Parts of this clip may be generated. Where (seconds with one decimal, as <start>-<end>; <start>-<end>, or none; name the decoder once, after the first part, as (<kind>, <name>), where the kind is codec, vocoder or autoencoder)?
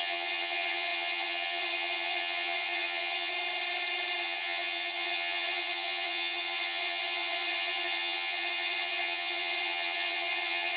0.0-3.3 (vocoder, HiFi-GAN); 4.2-10.8